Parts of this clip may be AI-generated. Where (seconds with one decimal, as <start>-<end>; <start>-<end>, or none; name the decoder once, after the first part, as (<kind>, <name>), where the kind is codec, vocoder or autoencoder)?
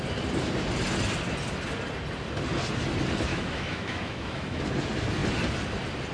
3.3-4.6 (autoencoder, DAC-VAE)